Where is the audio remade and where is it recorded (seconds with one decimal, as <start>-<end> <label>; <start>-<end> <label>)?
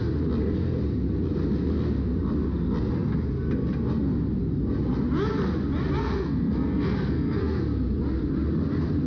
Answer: 0.0-6.0 recorded; 6.0-7.6 remade; 7.6-9.1 recorded